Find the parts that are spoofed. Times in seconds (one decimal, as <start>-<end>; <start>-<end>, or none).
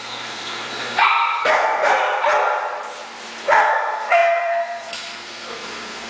0.0-2.0; 3.4-6.1